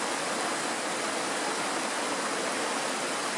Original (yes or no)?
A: yes